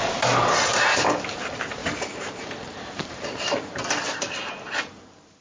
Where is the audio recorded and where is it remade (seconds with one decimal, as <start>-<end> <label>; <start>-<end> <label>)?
0.0-1.8 recorded; 1.8-4.5 remade; 4.5-5.4 recorded